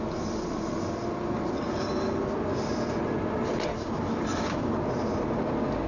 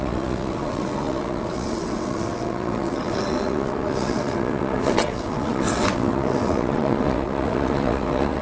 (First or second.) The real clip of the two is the first